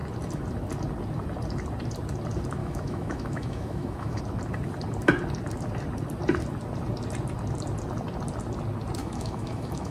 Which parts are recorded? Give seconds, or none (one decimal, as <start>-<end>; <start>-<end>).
0.0-2.6; 4.2-9.0